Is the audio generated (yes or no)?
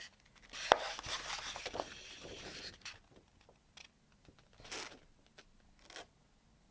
no